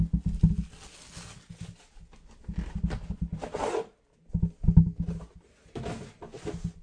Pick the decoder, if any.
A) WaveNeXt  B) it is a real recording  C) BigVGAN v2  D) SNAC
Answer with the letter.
B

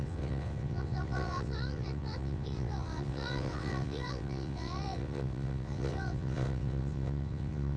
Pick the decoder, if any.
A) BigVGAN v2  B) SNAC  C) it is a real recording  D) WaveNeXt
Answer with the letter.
D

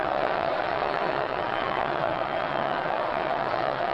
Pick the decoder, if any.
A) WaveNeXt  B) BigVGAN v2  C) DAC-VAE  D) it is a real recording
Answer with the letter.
A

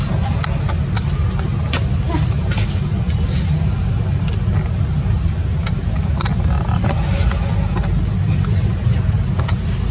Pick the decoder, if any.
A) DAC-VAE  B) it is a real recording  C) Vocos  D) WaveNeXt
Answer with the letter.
B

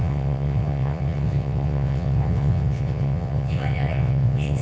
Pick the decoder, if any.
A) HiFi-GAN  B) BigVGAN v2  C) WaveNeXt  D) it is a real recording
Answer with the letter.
C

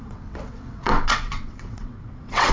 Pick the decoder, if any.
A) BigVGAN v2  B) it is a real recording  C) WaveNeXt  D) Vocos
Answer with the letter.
C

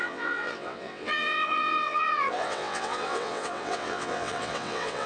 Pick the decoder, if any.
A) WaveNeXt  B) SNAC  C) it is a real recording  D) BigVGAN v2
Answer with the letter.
A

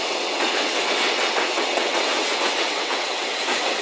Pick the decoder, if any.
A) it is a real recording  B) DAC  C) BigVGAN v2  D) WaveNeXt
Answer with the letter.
D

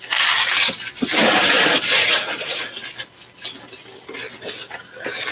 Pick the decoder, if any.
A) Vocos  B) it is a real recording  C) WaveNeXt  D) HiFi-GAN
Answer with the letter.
B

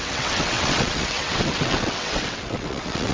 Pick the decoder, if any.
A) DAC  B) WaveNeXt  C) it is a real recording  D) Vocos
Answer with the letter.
B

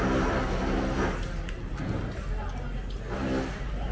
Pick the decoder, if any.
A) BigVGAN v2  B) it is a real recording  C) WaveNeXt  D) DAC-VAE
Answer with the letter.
B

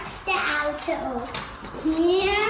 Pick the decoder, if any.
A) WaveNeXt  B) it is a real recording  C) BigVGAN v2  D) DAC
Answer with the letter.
B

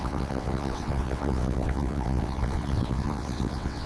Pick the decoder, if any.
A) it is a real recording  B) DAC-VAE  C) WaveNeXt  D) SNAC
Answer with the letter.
C